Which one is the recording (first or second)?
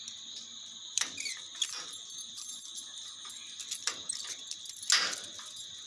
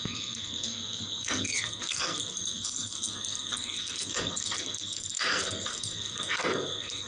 first